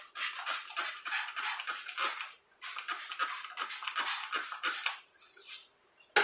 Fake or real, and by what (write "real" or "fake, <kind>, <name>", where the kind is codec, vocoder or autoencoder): real